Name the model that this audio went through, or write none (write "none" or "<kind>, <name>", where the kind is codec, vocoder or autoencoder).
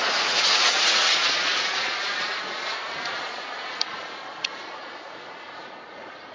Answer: vocoder, Vocos